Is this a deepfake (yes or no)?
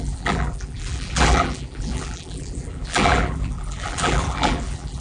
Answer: yes